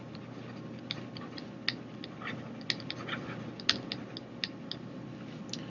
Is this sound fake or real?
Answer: real